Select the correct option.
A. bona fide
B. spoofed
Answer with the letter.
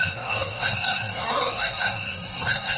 B